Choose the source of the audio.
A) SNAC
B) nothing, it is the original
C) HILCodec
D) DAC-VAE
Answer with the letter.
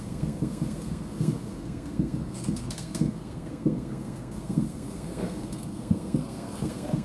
A